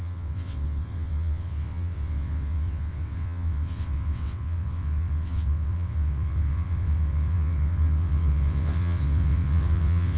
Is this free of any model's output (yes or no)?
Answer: no